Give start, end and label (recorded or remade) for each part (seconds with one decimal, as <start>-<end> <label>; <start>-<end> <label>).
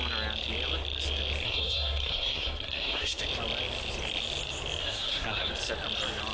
0.0-1.4 recorded; 1.4-3.2 remade; 3.2-4.8 recorded; 4.8-5.5 remade; 5.5-6.3 recorded